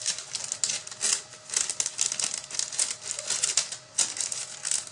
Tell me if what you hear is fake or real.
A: real